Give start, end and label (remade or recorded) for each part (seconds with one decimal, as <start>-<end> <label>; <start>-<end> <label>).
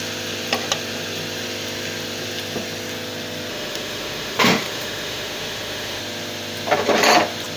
0.0-3.5 recorded; 3.5-6.0 remade; 6.0-7.6 recorded